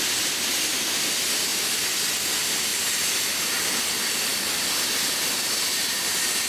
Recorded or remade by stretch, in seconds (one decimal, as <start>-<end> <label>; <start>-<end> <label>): 0.0-2.7 recorded; 2.7-3.6 remade; 3.6-6.5 recorded